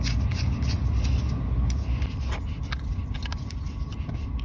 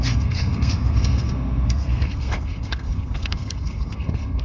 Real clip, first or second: first